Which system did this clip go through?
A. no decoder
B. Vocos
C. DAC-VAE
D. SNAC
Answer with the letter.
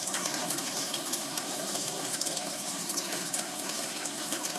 D